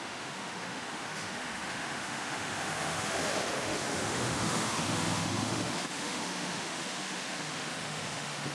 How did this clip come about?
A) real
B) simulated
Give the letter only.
B